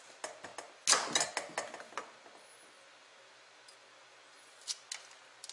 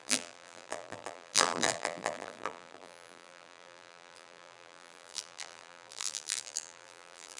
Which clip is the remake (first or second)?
second